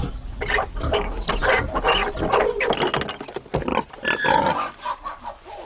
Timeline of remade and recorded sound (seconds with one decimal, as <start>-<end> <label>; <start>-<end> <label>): 0.0-5.7 recorded